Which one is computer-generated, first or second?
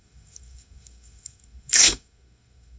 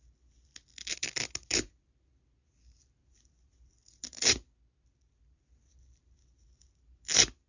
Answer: first